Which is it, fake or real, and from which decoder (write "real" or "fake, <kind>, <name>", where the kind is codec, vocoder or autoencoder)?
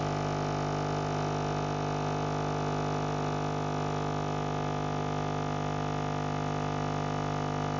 real